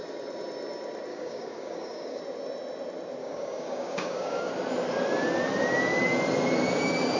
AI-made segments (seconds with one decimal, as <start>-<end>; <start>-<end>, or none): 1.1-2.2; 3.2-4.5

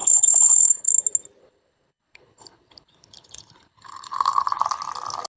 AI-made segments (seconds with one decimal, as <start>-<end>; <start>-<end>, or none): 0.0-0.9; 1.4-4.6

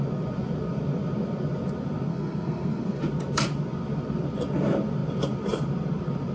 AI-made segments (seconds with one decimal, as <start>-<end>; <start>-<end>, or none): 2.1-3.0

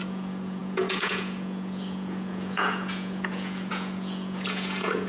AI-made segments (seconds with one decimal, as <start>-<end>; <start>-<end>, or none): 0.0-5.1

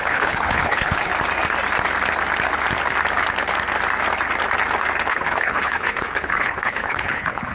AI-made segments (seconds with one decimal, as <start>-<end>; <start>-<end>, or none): 0.0-1.1; 5.1-7.5

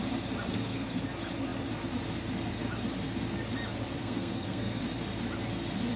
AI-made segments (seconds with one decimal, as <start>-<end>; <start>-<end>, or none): 0.5-1.0; 4.0-4.8

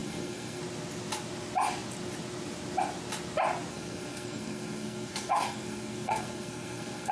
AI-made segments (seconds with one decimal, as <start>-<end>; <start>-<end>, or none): 0.0-0.6; 3.7-7.1

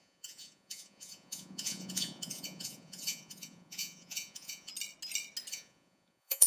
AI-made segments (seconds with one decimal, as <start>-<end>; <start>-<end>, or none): 0.0-4.7; 5.5-6.5